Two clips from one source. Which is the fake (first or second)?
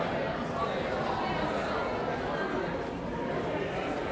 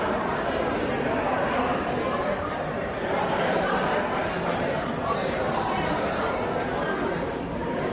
second